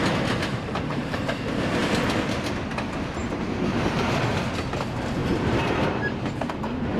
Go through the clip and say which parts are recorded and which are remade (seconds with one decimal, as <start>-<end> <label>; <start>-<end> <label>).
0.0-0.5 recorded; 0.5-1.8 remade; 1.8-3.2 recorded; 3.2-4.2 remade; 4.2-5.2 recorded; 5.2-6.5 remade; 6.5-7.0 recorded